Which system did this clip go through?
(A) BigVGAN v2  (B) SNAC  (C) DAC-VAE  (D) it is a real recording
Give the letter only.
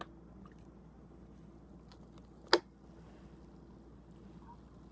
D